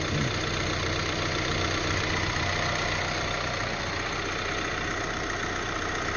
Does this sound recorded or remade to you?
recorded